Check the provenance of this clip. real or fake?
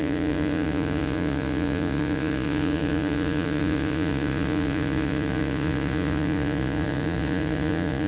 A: fake